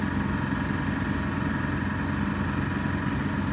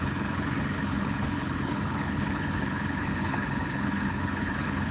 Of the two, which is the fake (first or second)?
second